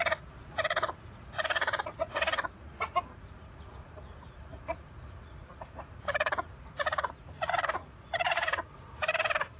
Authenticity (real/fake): fake